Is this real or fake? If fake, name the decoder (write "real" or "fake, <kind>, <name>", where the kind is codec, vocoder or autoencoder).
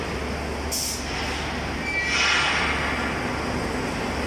real